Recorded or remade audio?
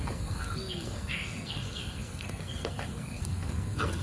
remade